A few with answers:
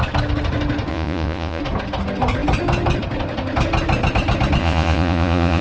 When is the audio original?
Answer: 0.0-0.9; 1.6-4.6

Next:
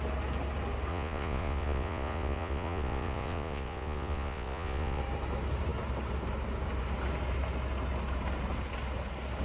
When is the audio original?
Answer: 0.0-0.9; 5.0-9.4

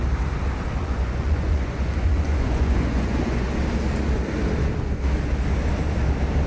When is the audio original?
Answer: 0.0-0.8; 3.5-6.5

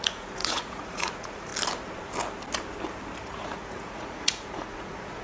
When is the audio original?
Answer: 1.5-3.2

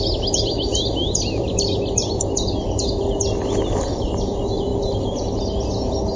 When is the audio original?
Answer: 0.0-6.2

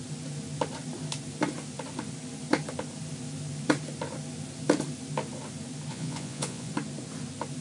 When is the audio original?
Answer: 0.0-5.9; 6.7-7.6

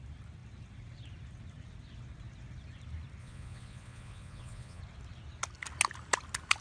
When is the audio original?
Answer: 0.0-3.2; 4.8-6.6